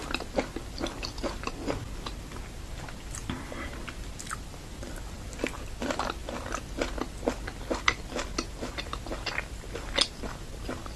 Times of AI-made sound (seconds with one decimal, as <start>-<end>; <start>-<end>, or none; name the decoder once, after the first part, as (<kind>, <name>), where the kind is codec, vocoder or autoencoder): 0.0-0.6 (vocoder, BigVGAN v2); 3.2-4.3